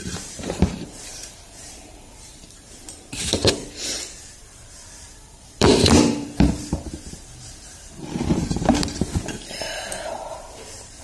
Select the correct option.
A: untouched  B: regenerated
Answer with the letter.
B